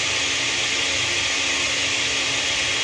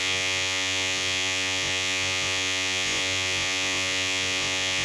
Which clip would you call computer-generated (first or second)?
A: second